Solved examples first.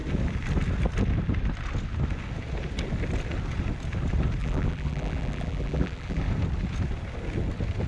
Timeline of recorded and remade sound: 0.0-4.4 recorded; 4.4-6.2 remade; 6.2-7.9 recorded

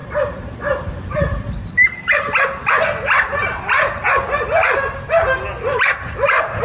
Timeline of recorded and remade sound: 0.0-2.2 remade; 2.2-3.3 recorded; 3.3-3.9 remade; 3.9-6.6 recorded

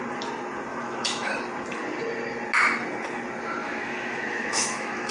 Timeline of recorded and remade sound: 0.0-0.7 recorded; 0.7-1.3 remade; 1.3-3.6 recorded; 3.6-5.1 remade

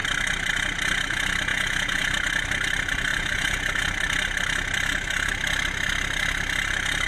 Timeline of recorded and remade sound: 0.0-1.5 recorded; 1.5-2.1 remade; 2.1-3.1 recorded; 3.1-3.8 remade; 3.8-7.1 recorded

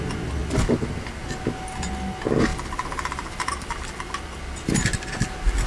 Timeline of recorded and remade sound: 0.0-0.4 recorded; 0.4-1.2 remade; 1.2-2.5 recorded; 2.5-5.7 remade

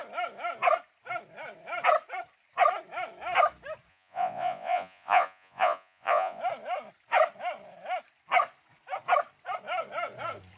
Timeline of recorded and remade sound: 0.0-3.9 recorded; 3.9-6.4 remade; 6.4-10.6 recorded

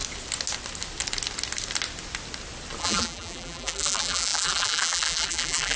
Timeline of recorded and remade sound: 0.0-2.8 recorded; 2.8-5.8 remade